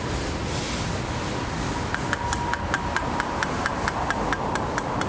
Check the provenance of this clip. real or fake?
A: real